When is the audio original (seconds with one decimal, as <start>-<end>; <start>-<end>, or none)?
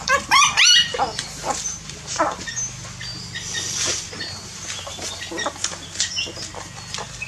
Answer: 0.0-0.9; 2.5-4.9; 5.5-7.3